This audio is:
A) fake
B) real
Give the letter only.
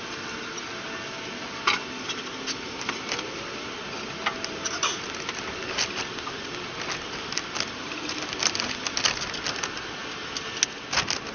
B